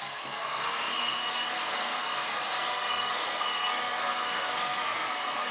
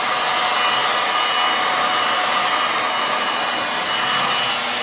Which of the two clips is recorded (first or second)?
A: second